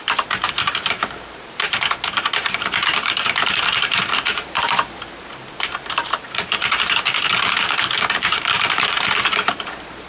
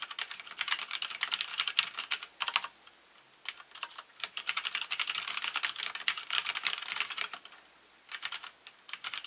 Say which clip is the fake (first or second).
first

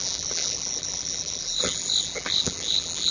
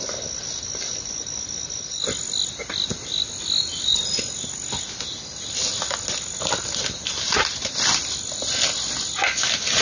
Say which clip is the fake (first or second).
first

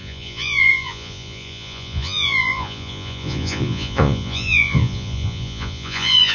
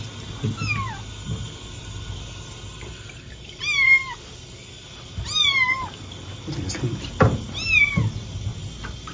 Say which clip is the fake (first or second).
first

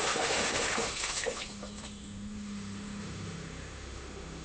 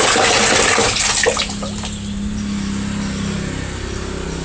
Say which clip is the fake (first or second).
first